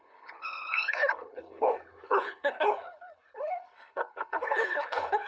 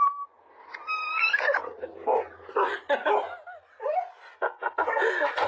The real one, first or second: second